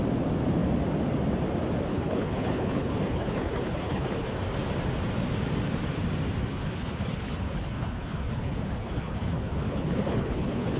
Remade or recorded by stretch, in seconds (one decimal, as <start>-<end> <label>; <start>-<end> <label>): 0.0-1.9 recorded; 1.9-4.3 remade; 4.3-6.5 recorded; 6.5-10.8 remade